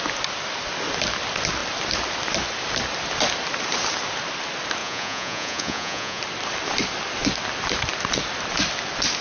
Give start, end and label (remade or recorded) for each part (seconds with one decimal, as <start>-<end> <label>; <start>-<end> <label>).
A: 0.0-4.8 recorded; 4.8-6.2 remade; 6.2-9.2 recorded

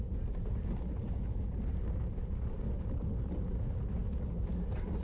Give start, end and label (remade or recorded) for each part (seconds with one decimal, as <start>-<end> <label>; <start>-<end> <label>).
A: 0.0-5.0 recorded

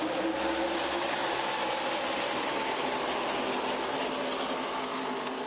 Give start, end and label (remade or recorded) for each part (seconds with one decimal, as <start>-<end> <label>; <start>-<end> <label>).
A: 0.0-5.5 recorded

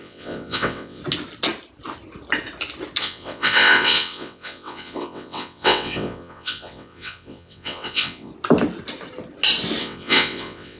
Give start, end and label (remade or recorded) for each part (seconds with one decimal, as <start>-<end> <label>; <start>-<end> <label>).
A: 0.0-1.0 remade; 1.0-3.0 recorded; 3.0-8.3 remade; 8.3-9.8 recorded; 9.8-10.8 remade